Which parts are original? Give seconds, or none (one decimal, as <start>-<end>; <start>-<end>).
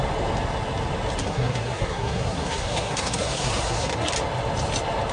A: 0.0-1.2; 4.1-5.1